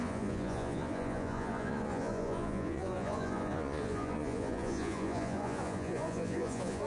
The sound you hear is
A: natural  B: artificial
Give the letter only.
B